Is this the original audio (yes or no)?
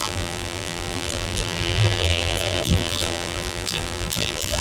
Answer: no